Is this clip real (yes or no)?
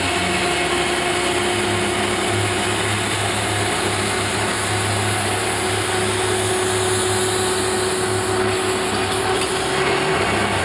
yes